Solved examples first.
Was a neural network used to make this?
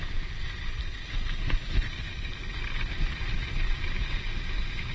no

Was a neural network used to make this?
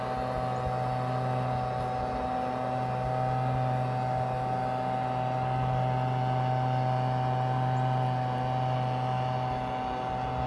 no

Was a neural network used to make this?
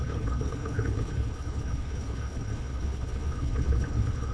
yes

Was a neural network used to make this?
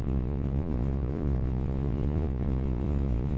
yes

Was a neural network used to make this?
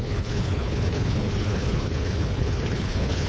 yes